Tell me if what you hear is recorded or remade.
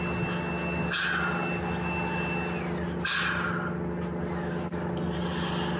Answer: recorded